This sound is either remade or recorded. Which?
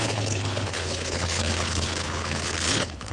remade